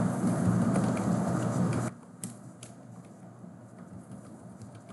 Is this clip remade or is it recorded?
recorded